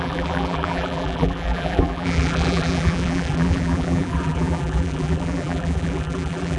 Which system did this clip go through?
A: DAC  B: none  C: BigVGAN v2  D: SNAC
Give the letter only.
C